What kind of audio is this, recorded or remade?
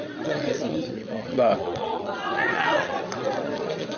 remade